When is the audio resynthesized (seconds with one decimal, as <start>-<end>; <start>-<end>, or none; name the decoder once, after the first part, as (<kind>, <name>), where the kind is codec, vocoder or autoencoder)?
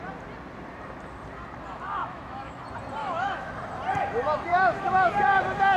2.0-2.6 (autoencoder, DAC-VAE); 3.0-3.5; 4.5-5.1